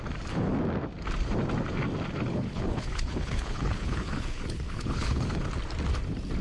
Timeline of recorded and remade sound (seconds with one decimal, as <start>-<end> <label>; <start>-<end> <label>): 0.0-2.3 recorded; 2.3-5.5 remade; 5.5-6.4 recorded